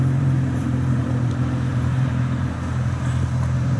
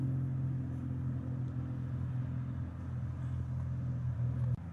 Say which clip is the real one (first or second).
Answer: second